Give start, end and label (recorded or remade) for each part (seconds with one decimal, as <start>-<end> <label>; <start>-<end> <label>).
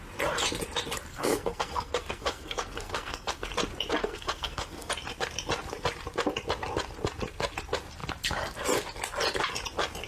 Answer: 0.0-1.1 recorded; 1.1-3.5 remade; 3.5-4.0 recorded; 4.0-4.9 remade; 4.9-10.1 recorded